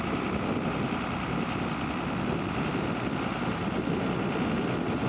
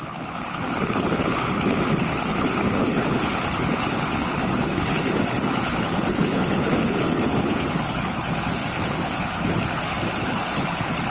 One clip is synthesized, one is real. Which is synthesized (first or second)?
second